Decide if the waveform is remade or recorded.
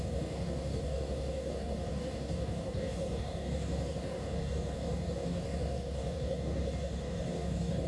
remade